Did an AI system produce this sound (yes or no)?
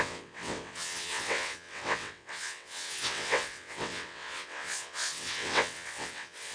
yes